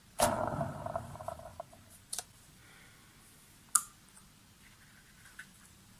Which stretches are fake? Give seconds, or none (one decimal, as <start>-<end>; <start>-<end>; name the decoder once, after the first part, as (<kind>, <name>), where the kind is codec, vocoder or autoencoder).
0.7-2.6 (vocoder, BigVGAN v2); 5.2-6.0